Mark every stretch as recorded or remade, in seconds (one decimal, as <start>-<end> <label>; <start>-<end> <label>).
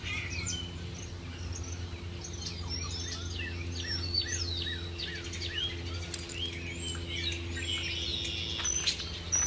0.0-9.5 recorded